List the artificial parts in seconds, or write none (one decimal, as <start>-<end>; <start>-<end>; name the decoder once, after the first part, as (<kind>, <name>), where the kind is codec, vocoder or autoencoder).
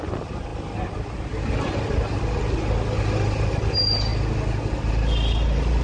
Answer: none